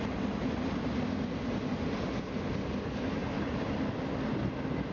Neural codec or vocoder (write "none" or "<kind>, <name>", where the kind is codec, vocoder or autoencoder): none